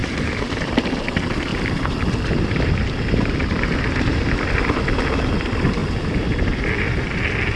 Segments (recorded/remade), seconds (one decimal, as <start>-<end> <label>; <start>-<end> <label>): 0.0-0.9 remade; 0.9-1.5 recorded; 1.5-3.3 remade; 3.3-4.1 recorded; 4.1-4.9 remade; 4.9-5.8 recorded; 5.8-6.6 remade; 6.6-7.6 recorded